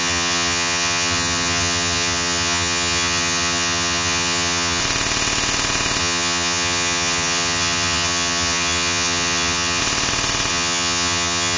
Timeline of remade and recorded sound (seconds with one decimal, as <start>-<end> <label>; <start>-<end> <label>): 0.0-4.8 remade; 4.8-6.0 recorded; 6.0-9.8 remade; 9.8-10.5 recorded; 10.5-11.6 remade